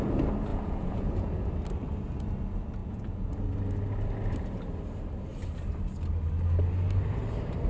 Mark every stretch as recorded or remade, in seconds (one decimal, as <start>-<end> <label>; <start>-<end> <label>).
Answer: 0.0-0.5 recorded; 0.5-1.5 remade; 1.5-2.8 recorded; 2.8-3.3 remade; 3.3-7.7 recorded